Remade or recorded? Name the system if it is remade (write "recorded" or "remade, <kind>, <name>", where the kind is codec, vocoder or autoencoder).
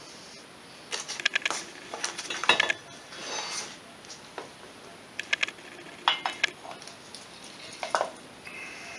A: recorded